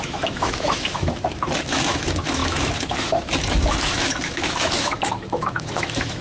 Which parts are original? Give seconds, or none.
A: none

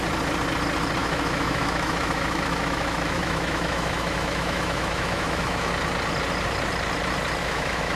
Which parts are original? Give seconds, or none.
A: 0.0-1.0; 5.7-7.4

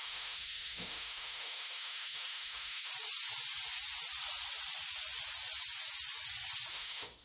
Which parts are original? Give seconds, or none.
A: 2.9-6.7

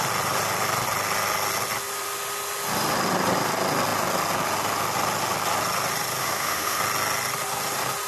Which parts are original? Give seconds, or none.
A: 0.0-6.2; 6.8-8.1